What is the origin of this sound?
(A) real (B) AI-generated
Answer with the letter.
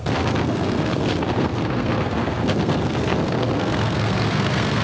B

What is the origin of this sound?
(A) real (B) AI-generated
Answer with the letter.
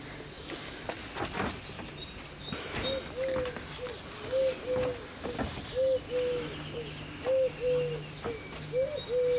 A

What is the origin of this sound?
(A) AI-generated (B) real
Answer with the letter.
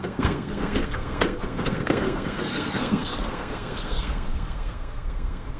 A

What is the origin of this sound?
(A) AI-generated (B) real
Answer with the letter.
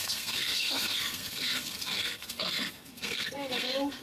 A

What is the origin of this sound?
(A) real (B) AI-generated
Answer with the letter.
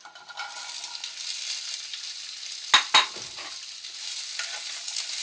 A